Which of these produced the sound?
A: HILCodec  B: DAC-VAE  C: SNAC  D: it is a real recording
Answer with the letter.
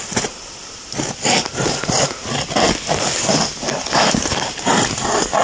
D